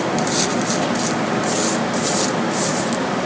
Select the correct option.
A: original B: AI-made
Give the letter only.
A